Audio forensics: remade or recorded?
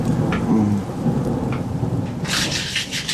recorded